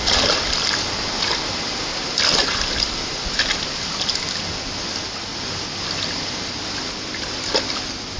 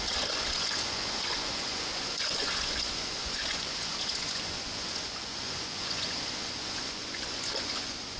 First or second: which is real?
first